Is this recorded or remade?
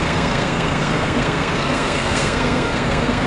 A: remade